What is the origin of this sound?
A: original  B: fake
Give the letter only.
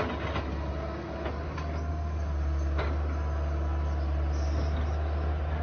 A